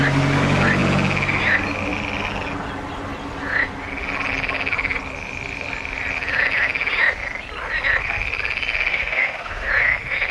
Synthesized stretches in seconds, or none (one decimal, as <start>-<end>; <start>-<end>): 8.9-9.7